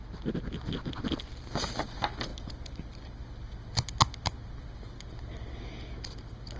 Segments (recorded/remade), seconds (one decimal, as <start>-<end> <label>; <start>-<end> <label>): 0.0-6.6 recorded